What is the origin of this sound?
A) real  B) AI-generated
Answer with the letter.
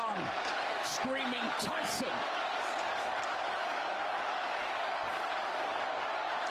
B